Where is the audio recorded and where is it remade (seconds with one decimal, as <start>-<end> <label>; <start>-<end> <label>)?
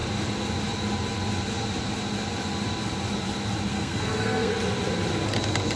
0.0-3.7 recorded; 3.7-4.5 remade; 4.5-5.8 recorded